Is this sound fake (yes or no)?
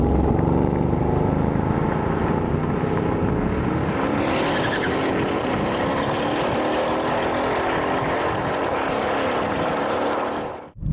no